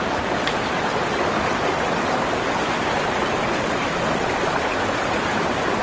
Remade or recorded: recorded